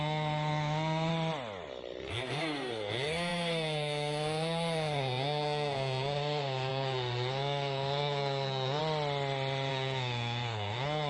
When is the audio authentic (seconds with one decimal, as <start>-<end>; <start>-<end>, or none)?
1.1-2.1; 8.8-9.7